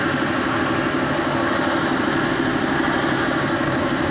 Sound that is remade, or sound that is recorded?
recorded